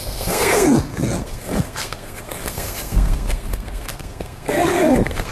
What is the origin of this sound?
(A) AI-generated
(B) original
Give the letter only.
A